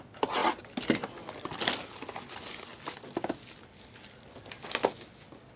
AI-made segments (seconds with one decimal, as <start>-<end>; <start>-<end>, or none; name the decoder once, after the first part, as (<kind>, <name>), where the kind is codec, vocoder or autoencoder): none